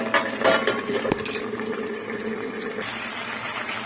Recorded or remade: recorded